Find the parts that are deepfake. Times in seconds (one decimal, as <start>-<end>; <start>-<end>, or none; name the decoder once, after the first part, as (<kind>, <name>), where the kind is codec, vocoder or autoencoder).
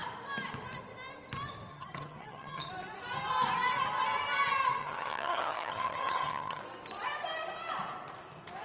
1.7-2.7 (vocoder, HiFi-GAN); 4.8-6.6